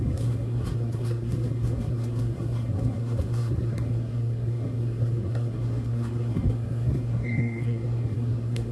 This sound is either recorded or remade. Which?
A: remade